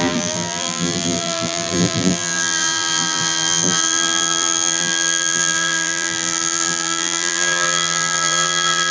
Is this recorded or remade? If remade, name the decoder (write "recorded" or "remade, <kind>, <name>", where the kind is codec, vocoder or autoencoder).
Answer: remade, vocoder, BigVGAN v2